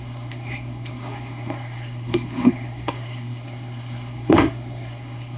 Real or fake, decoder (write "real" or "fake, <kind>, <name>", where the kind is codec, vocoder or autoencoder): fake, codec, SNAC